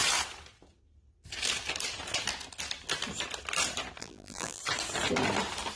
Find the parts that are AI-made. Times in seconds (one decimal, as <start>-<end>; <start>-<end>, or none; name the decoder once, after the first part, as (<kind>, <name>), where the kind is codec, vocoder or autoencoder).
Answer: 4.0-4.6 (vocoder, BigVGAN v2)